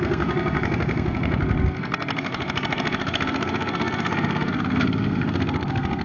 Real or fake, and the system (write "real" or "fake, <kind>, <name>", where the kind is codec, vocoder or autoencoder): fake, codec, SNAC